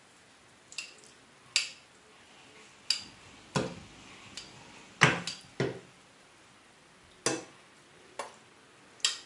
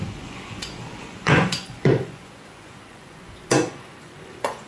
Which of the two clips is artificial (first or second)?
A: second